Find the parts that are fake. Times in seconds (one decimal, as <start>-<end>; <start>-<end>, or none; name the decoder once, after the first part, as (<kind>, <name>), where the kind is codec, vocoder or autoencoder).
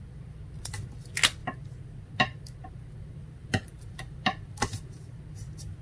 3.4-5.0 (vocoder, BigVGAN v2)